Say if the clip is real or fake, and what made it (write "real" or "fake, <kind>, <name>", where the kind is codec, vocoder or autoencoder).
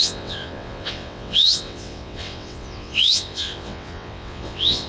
fake, vocoder, WaveNeXt